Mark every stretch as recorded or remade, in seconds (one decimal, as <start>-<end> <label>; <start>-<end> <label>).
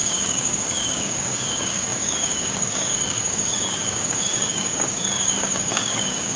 0.0-6.4 remade